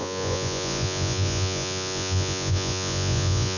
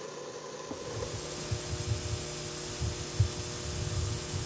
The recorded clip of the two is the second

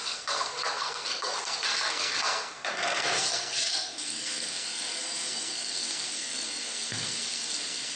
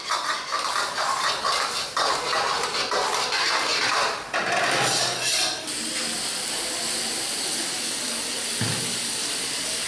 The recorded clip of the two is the second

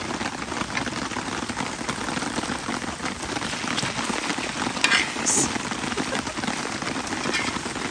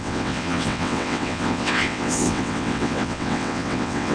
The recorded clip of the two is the first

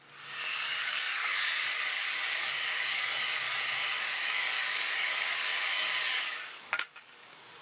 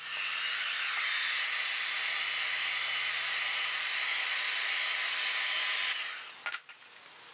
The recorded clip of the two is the second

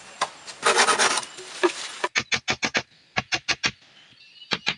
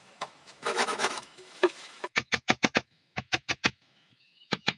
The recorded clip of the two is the first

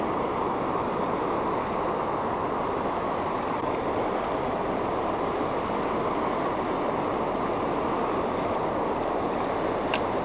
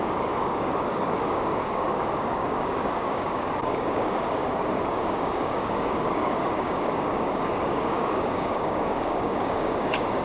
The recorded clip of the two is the first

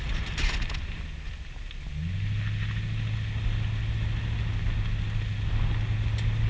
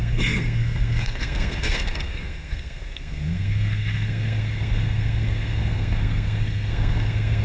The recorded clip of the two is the first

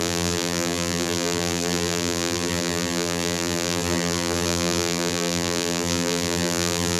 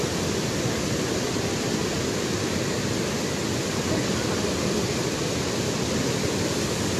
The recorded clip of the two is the second